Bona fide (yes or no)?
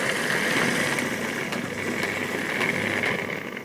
yes